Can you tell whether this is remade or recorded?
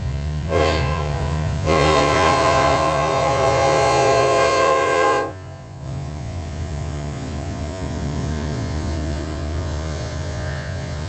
remade